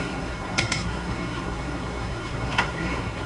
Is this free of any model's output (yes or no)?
no